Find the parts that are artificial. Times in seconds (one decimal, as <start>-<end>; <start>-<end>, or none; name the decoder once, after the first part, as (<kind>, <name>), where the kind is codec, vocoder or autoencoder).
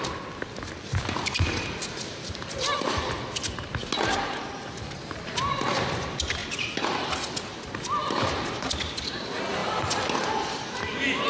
none